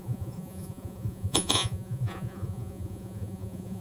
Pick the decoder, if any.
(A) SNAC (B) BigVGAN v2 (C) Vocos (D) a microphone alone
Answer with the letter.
C